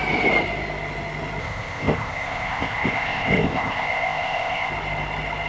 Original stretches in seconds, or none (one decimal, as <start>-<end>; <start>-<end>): 0.0-1.4; 4.7-5.5